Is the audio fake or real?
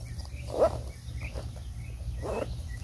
real